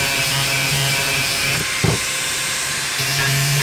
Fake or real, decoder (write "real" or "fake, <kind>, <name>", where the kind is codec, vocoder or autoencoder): fake, vocoder, BigVGAN v2